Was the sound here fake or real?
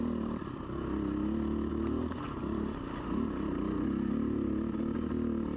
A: real